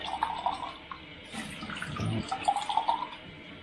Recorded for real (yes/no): yes